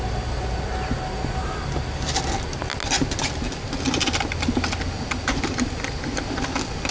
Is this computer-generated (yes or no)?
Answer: no